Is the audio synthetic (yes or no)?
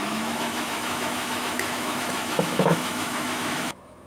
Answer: yes